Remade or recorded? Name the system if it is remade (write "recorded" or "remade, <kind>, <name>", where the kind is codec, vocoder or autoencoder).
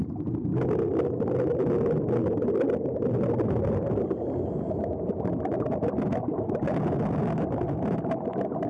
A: recorded